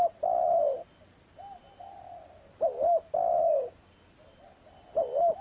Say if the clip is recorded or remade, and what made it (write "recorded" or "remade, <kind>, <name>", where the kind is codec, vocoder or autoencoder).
recorded